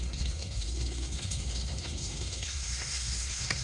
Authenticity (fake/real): fake